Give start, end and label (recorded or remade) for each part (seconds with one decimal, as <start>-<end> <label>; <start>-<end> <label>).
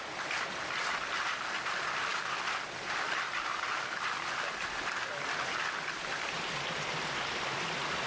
0.0-8.1 recorded